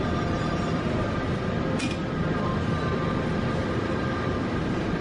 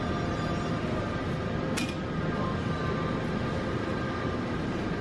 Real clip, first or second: second